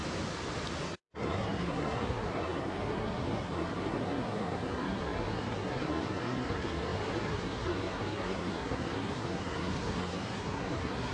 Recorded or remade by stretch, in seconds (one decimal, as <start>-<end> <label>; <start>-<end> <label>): 0.0-0.8 recorded; 0.8-11.1 remade